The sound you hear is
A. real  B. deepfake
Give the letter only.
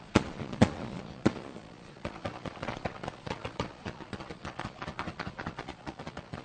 B